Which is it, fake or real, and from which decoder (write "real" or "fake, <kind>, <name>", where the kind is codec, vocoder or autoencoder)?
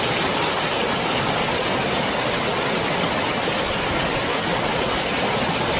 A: real